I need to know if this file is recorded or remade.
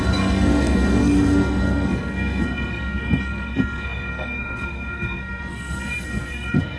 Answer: remade